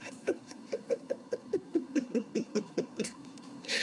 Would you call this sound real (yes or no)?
no